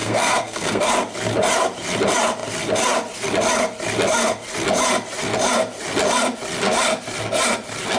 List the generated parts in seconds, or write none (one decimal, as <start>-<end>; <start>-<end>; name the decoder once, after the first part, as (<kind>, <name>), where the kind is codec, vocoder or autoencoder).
0.0-0.9 (codec, SNAC)